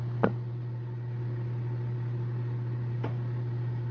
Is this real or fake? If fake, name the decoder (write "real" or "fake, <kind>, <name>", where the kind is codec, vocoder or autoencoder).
real